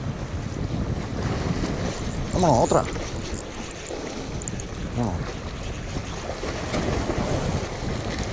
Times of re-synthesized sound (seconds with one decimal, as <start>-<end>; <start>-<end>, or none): none